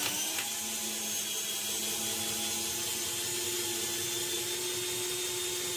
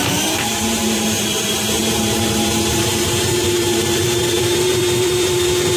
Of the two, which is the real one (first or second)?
first